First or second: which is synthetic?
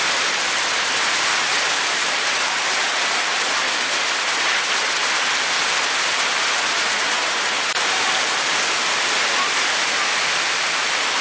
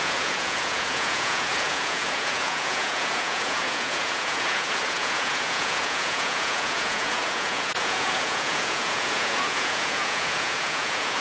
second